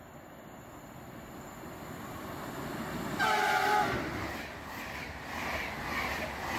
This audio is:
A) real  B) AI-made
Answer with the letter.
A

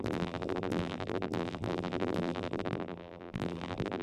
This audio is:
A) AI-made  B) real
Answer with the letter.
A